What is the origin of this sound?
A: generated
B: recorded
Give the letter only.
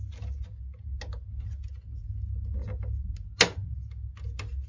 B